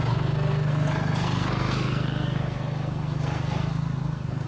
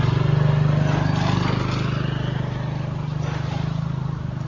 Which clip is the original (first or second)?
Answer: second